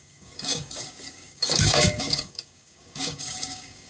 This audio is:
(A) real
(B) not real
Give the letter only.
B